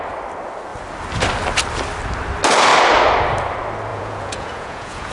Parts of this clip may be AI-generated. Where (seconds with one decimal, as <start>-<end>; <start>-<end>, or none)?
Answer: 3.9-5.1